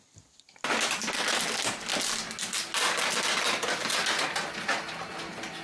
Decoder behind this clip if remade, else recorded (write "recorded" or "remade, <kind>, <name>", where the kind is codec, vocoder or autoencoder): recorded